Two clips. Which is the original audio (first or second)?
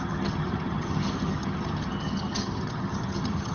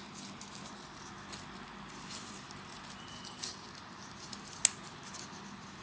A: second